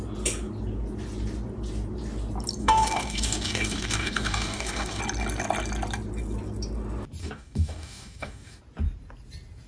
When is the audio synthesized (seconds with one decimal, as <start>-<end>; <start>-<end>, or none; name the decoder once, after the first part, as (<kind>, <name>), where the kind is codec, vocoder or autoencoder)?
2.6-5.0 (codec, DAC); 7.2-8.6